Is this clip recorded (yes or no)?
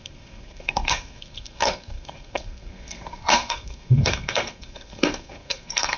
no